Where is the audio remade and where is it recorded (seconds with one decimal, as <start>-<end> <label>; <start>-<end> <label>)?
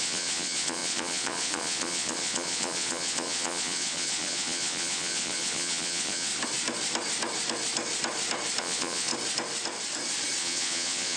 0.0-6.3 remade; 6.3-8.6 recorded; 8.6-9.1 remade; 9.1-10.4 recorded; 10.4-11.2 remade